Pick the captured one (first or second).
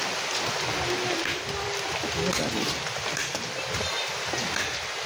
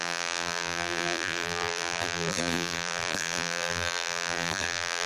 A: first